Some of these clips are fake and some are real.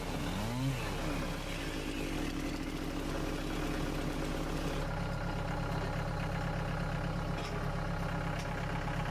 real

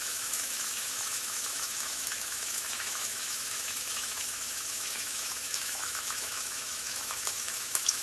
fake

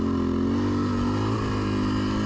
real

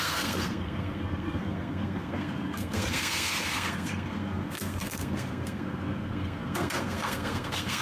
fake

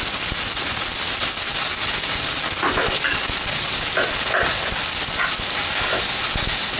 real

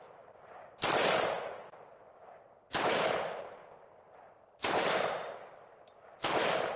real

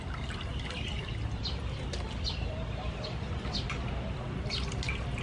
real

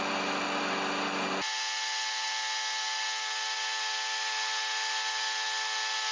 real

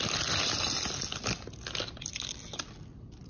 real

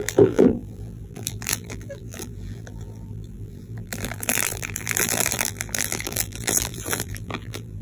fake